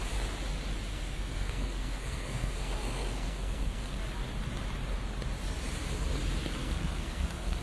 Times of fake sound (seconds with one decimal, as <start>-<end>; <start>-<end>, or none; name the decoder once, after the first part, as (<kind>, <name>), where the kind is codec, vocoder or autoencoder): 0.9-4.0 (codec, SNAC); 6.6-7.6